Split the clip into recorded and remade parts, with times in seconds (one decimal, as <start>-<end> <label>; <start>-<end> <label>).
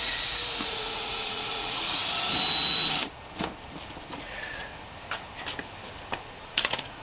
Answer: 0.0-2.0 remade; 2.0-4.2 recorded; 4.2-4.7 remade; 4.7-6.3 recorded; 6.3-7.0 remade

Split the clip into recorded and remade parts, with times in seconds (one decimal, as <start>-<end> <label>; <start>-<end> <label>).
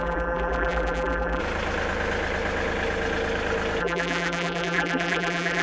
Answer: 0.0-1.4 remade; 1.4-3.8 recorded; 3.8-5.6 remade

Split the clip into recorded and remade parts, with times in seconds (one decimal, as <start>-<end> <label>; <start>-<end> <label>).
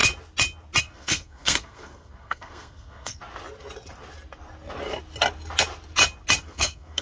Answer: 0.0-0.8 recorded; 0.8-3.2 remade; 3.2-6.4 recorded; 6.4-7.0 remade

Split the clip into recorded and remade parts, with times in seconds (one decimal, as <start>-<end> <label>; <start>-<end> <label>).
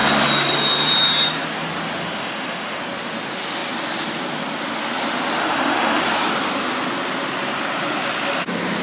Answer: 0.0-2.0 recorded; 2.0-2.8 remade; 2.8-5.4 recorded; 5.4-6.0 remade; 6.0-8.8 recorded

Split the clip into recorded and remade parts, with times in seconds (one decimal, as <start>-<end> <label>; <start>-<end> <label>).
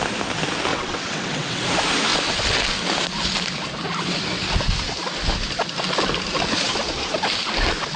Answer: 0.0-0.7 recorded; 0.7-1.6 remade; 1.6-8.0 recorded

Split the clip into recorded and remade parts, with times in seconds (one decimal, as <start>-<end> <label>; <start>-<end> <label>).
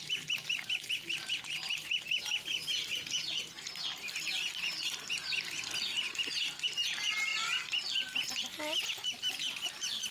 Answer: 0.0-10.1 recorded